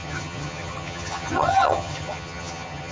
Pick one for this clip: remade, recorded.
remade